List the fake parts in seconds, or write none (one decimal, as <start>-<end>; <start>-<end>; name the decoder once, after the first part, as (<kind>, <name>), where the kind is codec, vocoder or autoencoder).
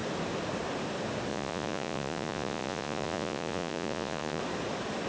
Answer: 1.3-4.4 (vocoder, Vocos)